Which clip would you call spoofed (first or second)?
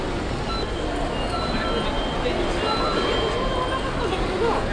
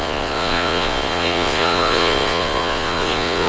second